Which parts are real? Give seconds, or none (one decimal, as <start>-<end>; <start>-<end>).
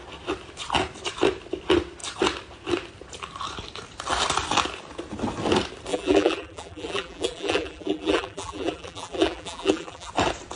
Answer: 0.0-5.9; 10.1-10.6